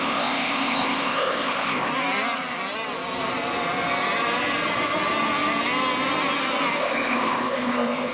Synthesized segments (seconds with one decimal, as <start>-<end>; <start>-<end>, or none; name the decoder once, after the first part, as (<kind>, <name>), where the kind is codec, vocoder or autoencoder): 0.0-1.9 (codec, ZipCodec); 6.8-8.1